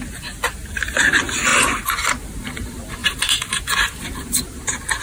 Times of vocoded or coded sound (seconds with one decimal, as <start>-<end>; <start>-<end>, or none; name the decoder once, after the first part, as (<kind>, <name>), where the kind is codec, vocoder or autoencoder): 1.5-2.1 (vocoder, BigVGAN v2); 3.0-3.6